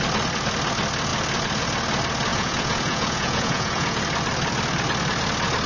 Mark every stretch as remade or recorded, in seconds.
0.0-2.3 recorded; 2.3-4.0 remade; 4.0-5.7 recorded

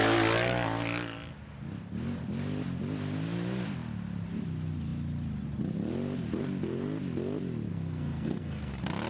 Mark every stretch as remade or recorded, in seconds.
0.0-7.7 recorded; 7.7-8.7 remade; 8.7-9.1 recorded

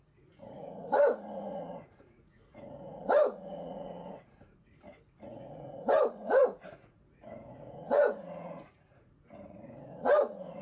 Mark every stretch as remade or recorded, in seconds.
0.0-10.6 remade

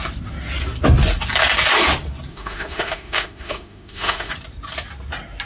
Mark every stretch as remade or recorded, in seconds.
0.0-2.3 recorded; 2.3-4.3 remade; 4.3-5.5 recorded

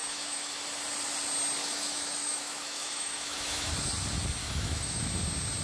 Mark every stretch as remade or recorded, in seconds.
0.0-0.5 remade; 0.5-1.6 recorded; 1.6-3.7 remade; 3.7-4.4 recorded; 4.4-5.0 remade; 5.0-5.6 recorded

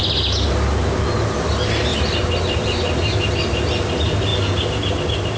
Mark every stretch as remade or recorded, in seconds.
0.0-5.4 recorded

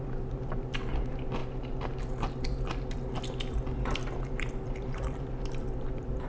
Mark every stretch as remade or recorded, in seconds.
0.0-1.4 remade; 1.4-2.0 recorded; 2.0-6.3 remade